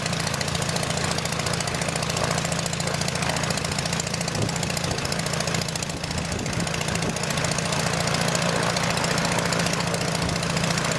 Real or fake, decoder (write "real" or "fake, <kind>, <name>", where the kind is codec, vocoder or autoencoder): real